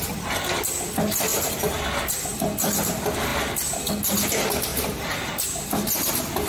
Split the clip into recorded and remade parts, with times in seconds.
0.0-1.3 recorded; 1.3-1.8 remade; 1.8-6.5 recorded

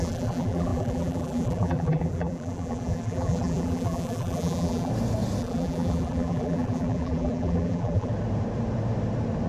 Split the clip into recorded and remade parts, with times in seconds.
0.0-4.9 remade; 4.9-5.4 recorded; 5.4-8.1 remade; 8.1-9.5 recorded

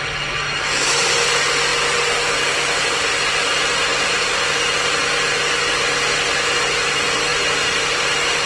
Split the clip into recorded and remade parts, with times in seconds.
0.0-3.9 recorded; 3.9-4.4 remade; 4.4-8.5 recorded

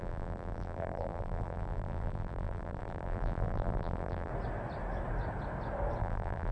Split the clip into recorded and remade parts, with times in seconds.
0.0-4.3 remade; 4.3-6.0 recorded; 6.0-6.5 remade

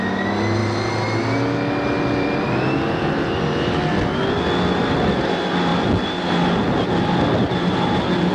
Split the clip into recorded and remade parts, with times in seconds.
0.0-8.3 recorded

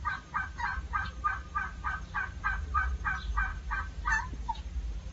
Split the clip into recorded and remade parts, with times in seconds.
0.0-0.7 recorded; 0.7-2.4 remade; 2.4-3.5 recorded; 3.5-4.5 remade; 4.5-5.1 recorded

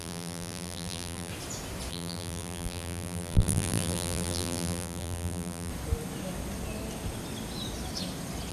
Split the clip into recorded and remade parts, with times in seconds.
0.0-1.3 remade; 1.3-1.9 recorded; 1.9-5.7 remade; 5.7-8.5 recorded